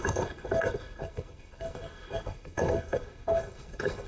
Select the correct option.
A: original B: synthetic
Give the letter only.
B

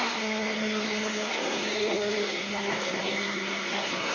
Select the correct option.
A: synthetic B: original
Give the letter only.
A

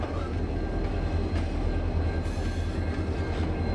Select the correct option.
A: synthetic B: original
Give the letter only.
B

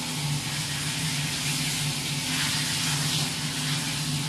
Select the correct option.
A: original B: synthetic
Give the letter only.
A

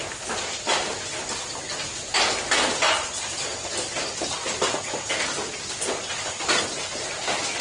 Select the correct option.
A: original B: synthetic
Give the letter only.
A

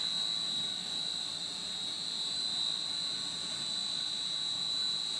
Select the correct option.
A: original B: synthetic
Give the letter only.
A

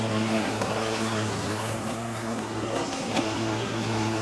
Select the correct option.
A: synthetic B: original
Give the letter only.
A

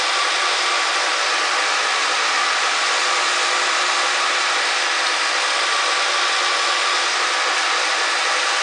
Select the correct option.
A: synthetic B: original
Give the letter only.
B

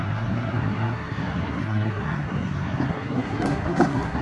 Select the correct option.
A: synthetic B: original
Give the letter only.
A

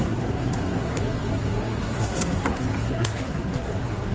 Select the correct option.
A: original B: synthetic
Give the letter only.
B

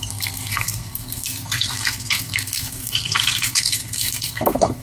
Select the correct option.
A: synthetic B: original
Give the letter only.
A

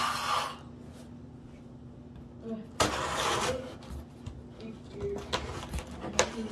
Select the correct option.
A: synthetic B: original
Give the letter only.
B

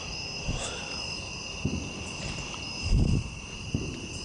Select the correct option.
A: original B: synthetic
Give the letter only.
A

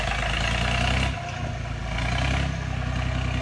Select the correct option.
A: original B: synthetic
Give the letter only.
A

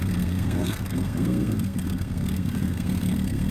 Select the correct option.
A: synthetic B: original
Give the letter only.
A